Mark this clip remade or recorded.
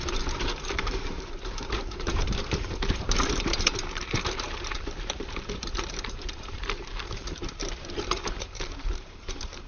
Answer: remade